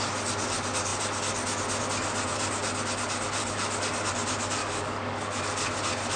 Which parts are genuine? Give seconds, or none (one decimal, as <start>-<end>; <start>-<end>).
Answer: 0.0-3.4; 4.1-4.6; 5.4-6.2